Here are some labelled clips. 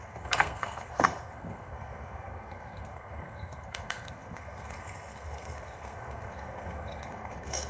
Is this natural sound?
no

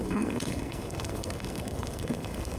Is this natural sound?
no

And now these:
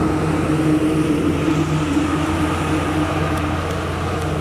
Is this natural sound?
yes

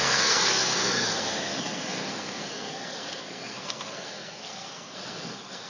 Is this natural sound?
no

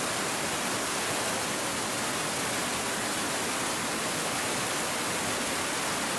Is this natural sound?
yes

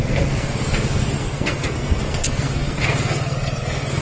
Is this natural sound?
no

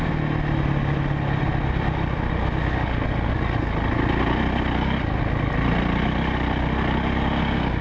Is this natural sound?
yes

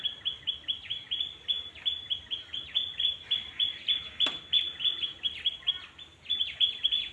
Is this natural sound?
yes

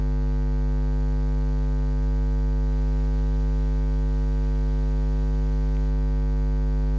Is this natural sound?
yes